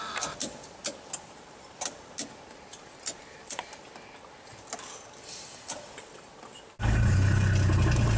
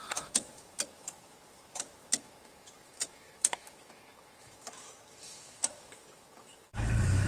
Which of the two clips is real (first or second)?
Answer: first